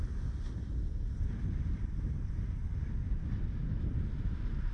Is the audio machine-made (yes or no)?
no